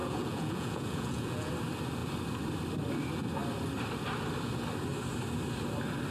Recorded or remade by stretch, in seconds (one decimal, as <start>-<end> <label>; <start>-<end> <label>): 0.0-1.5 remade; 1.5-6.1 recorded

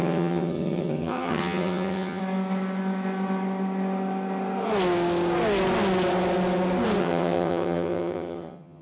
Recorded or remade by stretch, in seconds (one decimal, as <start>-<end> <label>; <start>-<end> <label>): 0.0-2.2 remade; 2.2-7.0 recorded; 7.0-8.8 remade

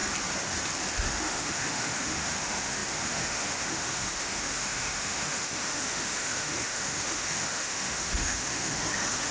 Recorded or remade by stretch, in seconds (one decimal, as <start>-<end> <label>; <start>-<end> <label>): 0.0-1.1 recorded; 1.1-9.3 remade

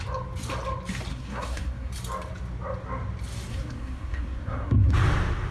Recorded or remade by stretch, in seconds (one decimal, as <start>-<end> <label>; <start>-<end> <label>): 0.0-1.1 recorded; 1.1-1.9 remade; 1.9-3.5 recorded; 3.5-4.9 remade; 4.9-5.5 recorded